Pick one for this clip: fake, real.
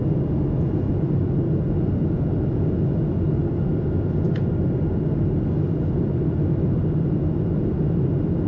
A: real